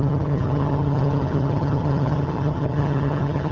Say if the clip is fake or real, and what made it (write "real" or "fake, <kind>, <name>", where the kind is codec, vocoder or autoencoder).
fake, vocoder, HiFi-GAN